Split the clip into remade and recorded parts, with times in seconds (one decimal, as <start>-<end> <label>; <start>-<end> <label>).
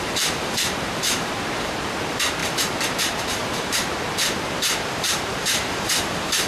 0.0-6.5 remade